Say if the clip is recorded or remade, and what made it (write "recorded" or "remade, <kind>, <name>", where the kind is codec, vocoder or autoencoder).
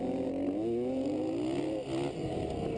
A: recorded